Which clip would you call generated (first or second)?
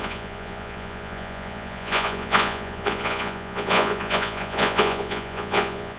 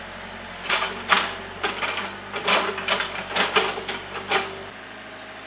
first